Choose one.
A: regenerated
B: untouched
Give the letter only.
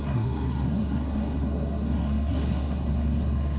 A